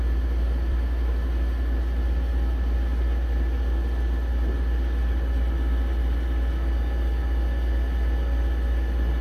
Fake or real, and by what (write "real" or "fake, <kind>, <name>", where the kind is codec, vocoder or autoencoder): real